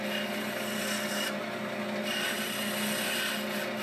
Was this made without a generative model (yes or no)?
yes